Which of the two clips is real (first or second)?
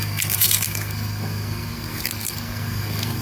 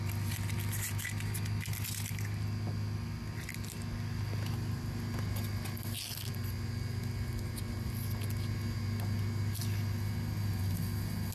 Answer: second